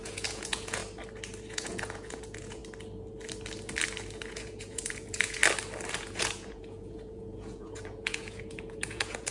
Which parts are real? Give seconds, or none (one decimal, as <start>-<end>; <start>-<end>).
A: 0.8-1.5; 2.6-4.3; 5.4-5.9